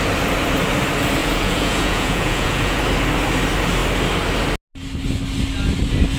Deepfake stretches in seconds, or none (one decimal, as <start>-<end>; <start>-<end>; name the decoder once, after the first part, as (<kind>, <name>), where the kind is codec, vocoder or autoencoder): 1.2-2.8 (vocoder, Vocos)